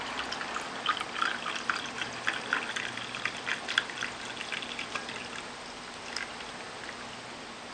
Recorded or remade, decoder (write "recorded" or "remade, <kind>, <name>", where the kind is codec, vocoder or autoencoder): recorded